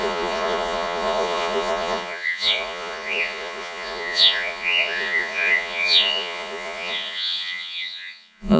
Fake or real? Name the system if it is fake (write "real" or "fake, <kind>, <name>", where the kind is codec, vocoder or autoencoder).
fake, vocoder, Vocos